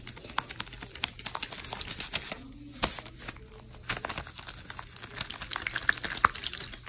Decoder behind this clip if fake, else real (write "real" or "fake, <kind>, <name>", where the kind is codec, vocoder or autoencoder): real